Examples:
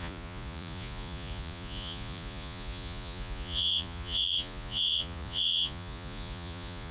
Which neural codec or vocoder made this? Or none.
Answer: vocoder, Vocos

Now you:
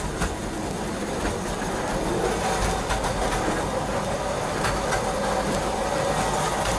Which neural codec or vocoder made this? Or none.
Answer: none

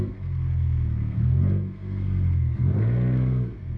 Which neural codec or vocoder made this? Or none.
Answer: codec, SNAC